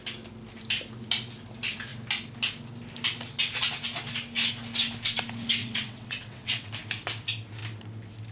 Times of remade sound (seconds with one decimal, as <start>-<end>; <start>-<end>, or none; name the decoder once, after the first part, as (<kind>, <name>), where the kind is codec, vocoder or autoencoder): 5.6-6.7 (vocoder, WaveNeXt)